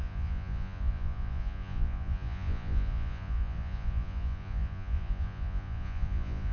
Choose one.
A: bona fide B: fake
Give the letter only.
B